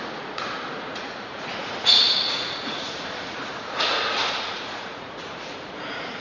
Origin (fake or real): fake